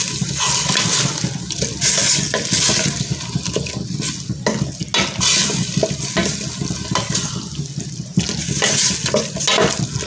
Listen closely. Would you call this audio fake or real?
real